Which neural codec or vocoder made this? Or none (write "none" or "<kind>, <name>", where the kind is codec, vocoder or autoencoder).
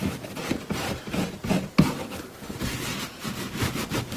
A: none